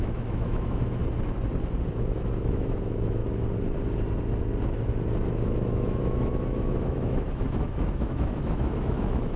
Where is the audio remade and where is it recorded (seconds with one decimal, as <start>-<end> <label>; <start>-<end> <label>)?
0.0-1.0 remade; 1.0-1.9 recorded; 1.9-3.2 remade; 3.2-5.3 recorded; 5.3-9.4 remade